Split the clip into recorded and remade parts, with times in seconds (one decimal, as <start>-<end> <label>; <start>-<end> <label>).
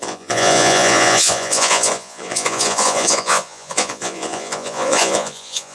0.0-5.7 remade